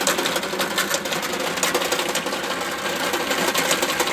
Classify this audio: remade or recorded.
recorded